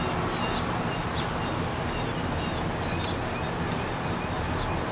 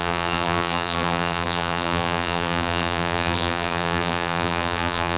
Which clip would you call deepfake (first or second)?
second